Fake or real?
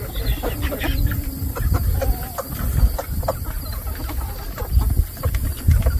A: real